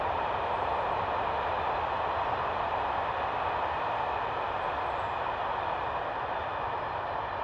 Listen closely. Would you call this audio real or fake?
real